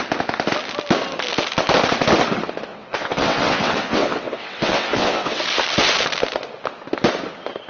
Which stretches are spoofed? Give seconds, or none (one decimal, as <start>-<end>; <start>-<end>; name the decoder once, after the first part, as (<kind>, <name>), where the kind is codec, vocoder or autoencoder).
2.7-5.4 (vocoder, WaveNeXt)